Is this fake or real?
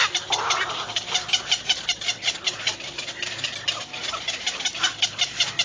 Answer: real